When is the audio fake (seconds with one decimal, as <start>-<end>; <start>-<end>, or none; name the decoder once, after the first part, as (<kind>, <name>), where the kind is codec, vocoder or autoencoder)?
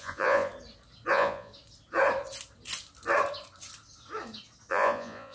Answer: 0.0-0.5 (vocoder, Vocos); 1.1-1.5; 4.7-5.3